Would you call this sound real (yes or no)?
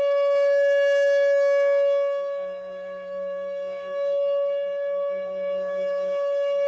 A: no